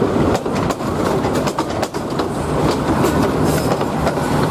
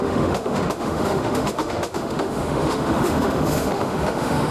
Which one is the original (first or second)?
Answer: first